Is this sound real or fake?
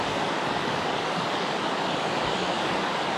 fake